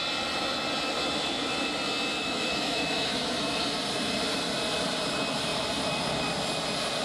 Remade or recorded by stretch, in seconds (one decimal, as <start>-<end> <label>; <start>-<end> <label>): 0.0-2.2 recorded; 2.2-3.6 remade; 3.6-7.0 recorded